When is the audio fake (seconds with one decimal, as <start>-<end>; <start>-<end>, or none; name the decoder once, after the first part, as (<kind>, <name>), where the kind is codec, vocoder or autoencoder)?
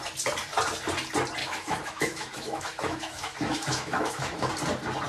1.4-4.5 (autoencoder, DAC-VAE)